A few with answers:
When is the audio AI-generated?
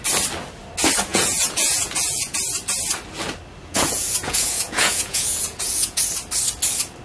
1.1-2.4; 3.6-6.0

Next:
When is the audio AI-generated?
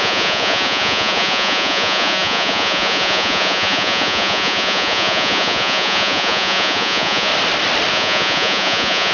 0.0-7.3; 7.9-9.1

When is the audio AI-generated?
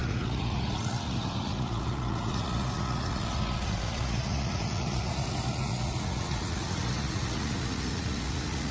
0.0-8.7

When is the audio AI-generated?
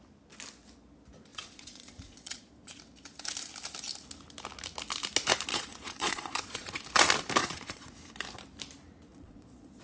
1.3-2.8; 5.5-6.8; 7.4-7.9; 9.1-9.8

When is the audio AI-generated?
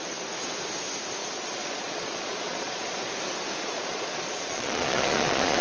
1.2-3.0; 3.6-5.6